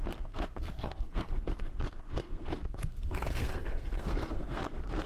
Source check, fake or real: fake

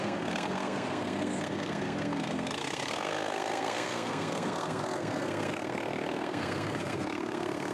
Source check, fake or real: fake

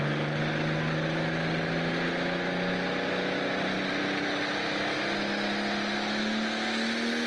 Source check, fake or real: real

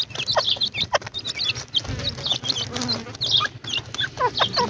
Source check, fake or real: real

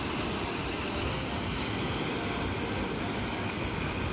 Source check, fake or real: real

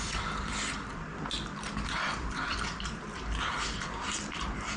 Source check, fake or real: fake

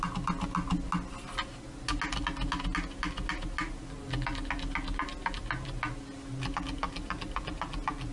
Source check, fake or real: real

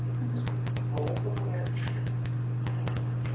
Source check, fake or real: real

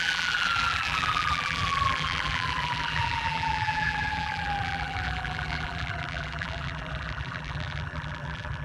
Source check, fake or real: fake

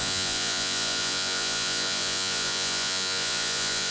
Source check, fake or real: fake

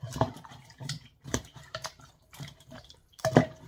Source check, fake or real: fake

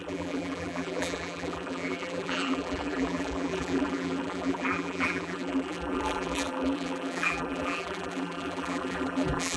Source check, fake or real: fake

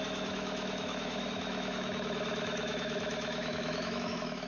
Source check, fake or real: fake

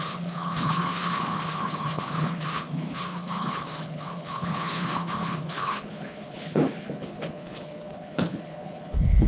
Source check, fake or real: fake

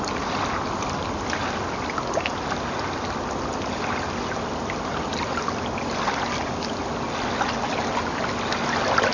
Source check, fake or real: real